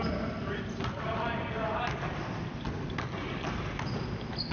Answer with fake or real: real